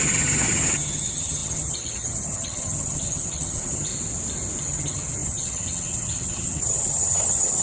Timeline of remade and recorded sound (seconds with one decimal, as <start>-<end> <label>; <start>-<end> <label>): 0.0-3.9 remade; 3.9-4.6 recorded; 4.6-7.6 remade